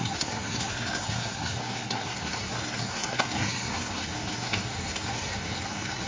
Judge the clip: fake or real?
fake